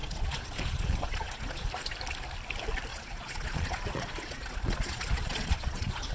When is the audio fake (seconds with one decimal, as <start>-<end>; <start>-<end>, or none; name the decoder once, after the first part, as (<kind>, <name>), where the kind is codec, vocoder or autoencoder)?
0.0-1.7 (vocoder, Vocos); 2.9-6.1